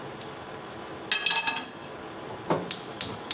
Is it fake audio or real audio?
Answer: real